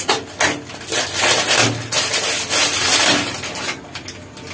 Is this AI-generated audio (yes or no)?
no